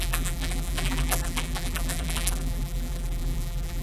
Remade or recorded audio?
remade